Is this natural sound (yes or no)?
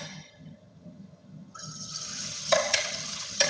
no